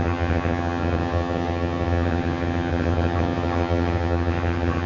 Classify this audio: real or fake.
fake